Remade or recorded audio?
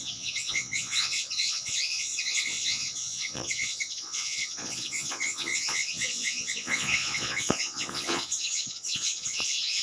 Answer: remade